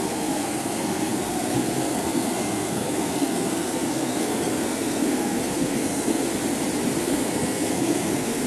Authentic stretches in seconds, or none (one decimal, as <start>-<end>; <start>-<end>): 6.3-7.0